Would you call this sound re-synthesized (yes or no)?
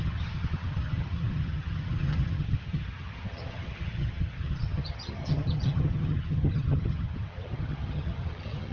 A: yes